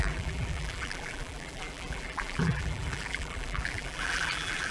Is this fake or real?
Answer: fake